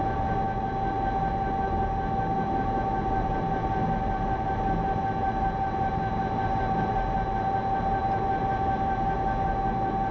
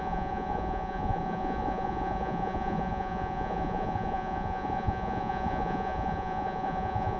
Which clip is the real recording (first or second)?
first